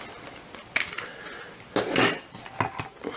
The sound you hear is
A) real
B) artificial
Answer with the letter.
A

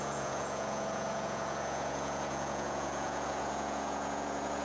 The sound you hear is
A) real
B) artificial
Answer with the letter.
B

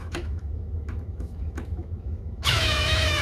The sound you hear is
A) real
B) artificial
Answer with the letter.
B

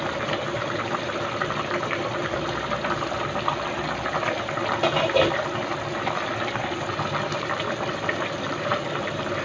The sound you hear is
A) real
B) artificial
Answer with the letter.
B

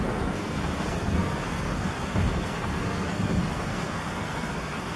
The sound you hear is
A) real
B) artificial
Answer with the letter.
B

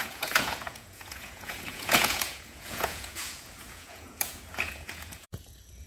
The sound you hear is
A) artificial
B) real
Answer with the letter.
A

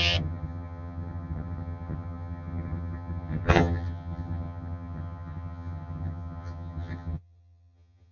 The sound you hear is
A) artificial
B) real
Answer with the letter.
A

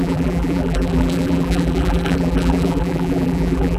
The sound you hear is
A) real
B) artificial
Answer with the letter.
B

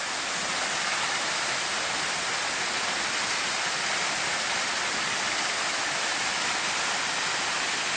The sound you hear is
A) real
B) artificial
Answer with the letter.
A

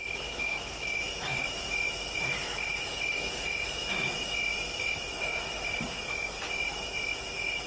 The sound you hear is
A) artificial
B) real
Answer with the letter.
A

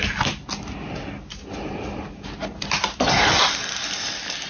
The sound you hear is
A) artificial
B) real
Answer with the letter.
B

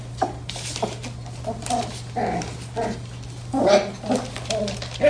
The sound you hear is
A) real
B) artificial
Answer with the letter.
A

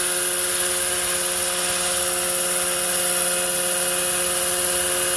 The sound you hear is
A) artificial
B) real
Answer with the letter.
B